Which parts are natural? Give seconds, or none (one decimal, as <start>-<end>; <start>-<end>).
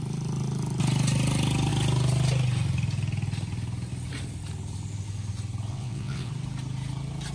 0.0-5.7; 6.3-7.3